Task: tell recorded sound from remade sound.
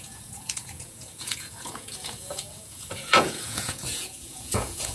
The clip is remade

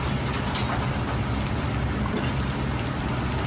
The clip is recorded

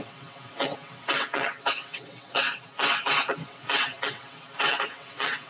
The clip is remade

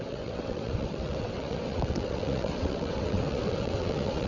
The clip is remade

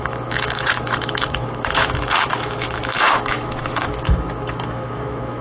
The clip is remade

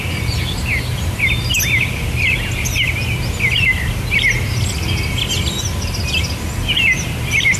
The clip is recorded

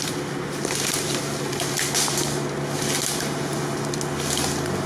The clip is recorded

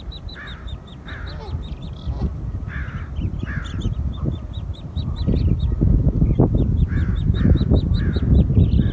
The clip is recorded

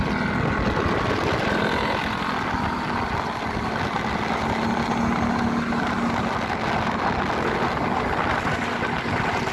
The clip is recorded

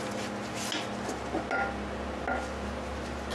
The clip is recorded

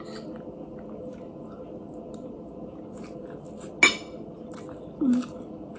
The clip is recorded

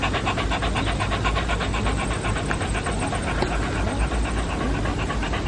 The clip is recorded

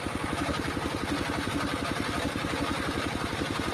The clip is recorded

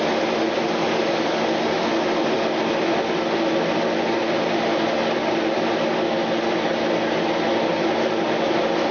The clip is recorded